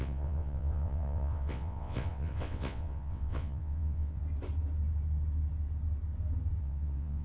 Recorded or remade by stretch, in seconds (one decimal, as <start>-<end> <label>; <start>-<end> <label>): 0.0-4.2 remade; 4.2-6.6 recorded; 6.6-7.2 remade